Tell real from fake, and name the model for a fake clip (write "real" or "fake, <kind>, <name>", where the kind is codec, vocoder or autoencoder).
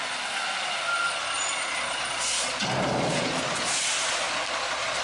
real